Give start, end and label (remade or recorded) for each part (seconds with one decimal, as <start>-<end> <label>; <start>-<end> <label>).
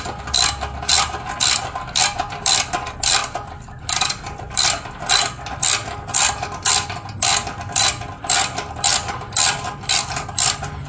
0.0-10.9 recorded